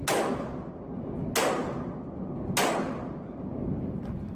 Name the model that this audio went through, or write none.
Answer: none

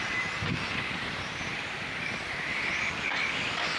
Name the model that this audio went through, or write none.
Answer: vocoder, BigVGAN v2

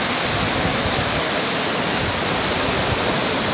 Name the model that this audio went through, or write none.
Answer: none